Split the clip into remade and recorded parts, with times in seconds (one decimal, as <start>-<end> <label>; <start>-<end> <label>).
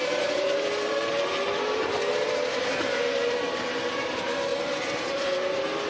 0.0-5.9 remade